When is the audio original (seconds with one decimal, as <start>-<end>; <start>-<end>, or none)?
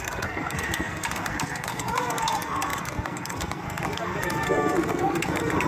none